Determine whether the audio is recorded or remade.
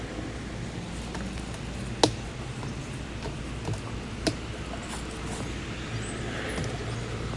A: recorded